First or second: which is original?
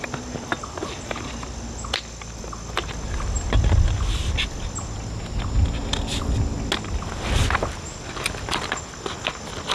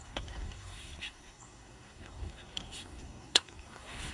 first